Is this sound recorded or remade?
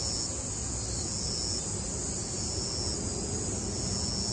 recorded